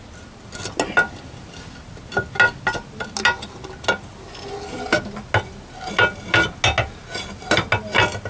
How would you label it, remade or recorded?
recorded